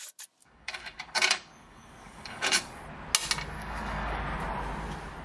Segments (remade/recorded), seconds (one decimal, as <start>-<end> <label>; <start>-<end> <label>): 0.0-0.4 recorded; 0.4-2.8 remade; 2.8-3.6 recorded; 3.6-4.2 remade; 4.2-5.2 recorded